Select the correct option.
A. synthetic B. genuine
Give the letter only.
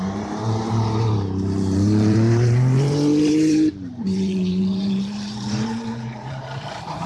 A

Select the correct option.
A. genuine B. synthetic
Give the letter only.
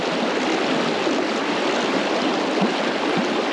A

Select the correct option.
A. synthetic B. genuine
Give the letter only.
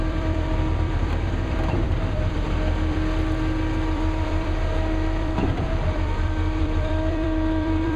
A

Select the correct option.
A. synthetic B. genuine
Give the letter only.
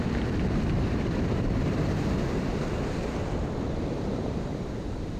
A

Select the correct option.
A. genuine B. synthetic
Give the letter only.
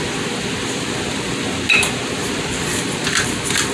B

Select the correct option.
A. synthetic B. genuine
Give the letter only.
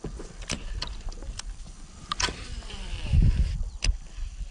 A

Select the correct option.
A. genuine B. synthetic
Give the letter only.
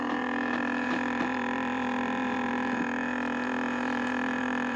B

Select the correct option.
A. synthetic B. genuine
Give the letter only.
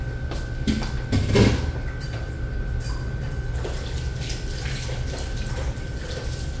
B